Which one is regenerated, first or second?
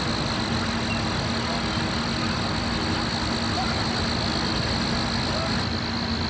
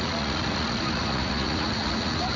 second